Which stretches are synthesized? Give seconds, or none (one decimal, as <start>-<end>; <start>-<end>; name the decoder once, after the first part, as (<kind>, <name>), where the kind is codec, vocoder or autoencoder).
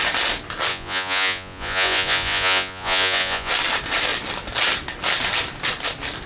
0.7-3.5 (vocoder, Vocos)